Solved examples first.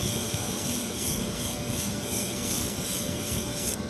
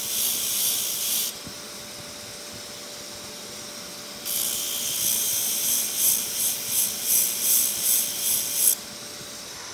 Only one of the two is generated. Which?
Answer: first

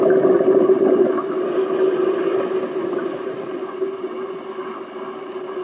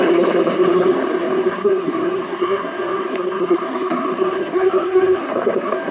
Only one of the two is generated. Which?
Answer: second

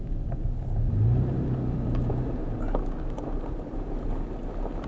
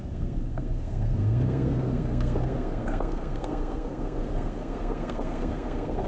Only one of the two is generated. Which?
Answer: second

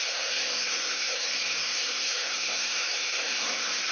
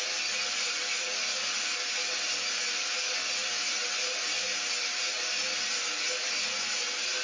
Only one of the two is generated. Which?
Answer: first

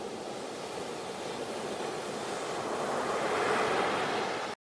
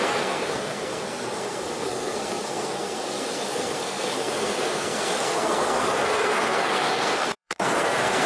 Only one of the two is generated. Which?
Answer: second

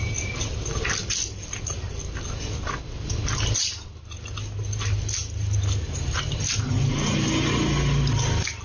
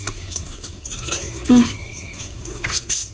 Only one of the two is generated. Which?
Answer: second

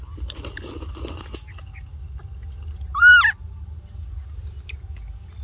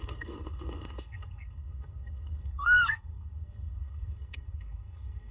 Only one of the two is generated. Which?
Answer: second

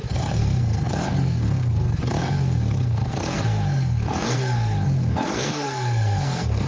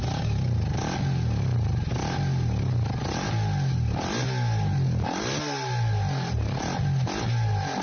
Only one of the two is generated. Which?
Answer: first